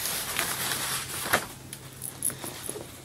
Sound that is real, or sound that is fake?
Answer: real